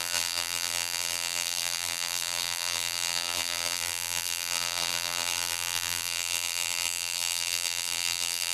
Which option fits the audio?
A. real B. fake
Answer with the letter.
B